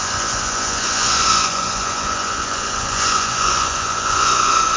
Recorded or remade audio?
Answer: remade